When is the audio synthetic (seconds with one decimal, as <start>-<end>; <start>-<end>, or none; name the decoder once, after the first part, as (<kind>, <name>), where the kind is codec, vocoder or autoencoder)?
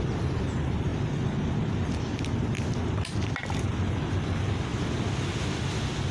none